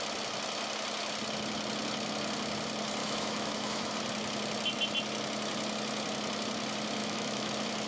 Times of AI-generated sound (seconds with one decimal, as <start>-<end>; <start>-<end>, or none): 3.0-3.9; 7.0-7.5

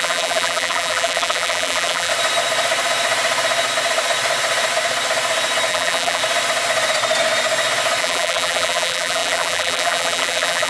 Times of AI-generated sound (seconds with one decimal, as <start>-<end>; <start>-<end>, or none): 0.0-2.1; 5.7-6.2; 8.0-10.7

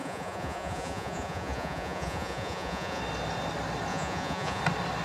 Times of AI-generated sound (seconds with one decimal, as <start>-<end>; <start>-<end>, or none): 0.0-3.0; 3.9-4.6

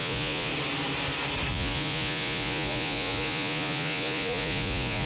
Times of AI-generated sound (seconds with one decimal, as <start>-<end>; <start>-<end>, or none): 0.0-0.5; 1.5-5.1

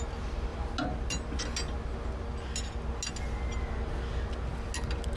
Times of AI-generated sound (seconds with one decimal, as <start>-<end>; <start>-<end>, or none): none